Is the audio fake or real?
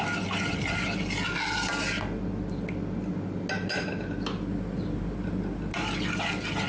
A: real